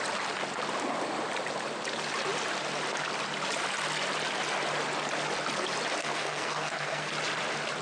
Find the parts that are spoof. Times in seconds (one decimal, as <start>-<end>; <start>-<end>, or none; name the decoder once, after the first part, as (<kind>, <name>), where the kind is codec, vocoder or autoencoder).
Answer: 6.0-7.1 (codec, SNAC)